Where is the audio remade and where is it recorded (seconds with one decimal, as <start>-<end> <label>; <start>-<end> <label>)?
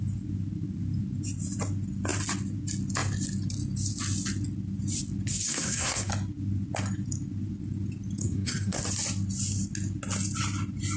0.0-5.3 recorded; 5.3-6.1 remade; 6.1-8.2 recorded; 8.2-8.8 remade; 8.8-11.0 recorded